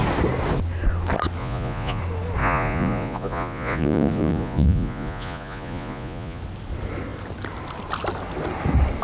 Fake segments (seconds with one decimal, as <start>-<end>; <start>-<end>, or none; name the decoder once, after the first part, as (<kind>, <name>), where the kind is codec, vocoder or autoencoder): 1.4-2.0 (vocoder, Vocos); 2.4-6.4